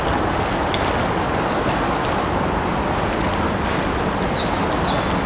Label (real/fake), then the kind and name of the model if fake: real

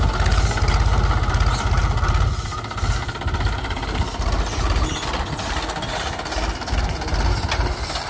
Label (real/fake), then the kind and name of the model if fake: real